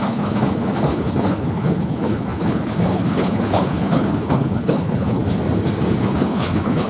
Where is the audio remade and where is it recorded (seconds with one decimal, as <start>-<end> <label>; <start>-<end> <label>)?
0.0-5.2 remade; 5.2-6.0 recorded; 6.0-6.9 remade